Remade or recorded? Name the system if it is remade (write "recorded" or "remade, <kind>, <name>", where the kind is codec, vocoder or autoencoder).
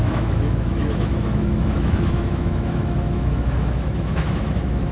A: remade, autoencoder, DAC-VAE